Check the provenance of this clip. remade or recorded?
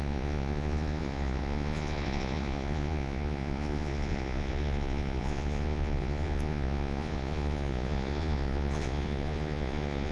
remade